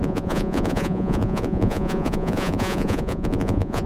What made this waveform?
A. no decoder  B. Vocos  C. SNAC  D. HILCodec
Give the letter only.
B